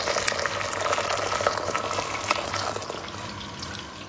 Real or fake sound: real